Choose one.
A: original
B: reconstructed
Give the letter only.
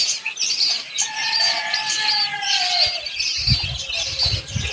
A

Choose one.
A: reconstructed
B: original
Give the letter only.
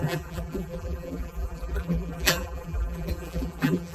A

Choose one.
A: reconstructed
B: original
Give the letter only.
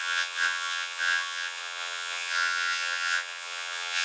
A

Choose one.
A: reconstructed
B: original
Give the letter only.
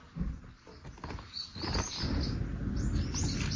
B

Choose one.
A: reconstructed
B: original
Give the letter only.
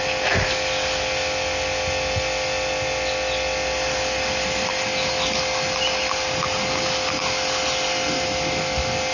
B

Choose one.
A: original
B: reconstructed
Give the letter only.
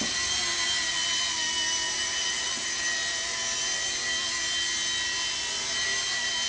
A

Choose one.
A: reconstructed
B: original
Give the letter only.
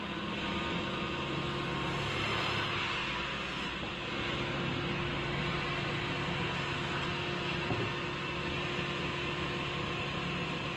B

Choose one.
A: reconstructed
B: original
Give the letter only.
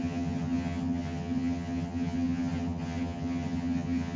A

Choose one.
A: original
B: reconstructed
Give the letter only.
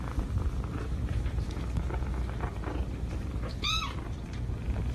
B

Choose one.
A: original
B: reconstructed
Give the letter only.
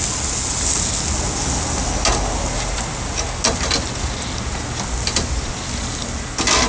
A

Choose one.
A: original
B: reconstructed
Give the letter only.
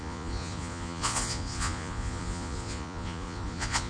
B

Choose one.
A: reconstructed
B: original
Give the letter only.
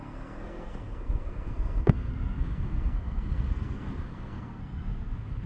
A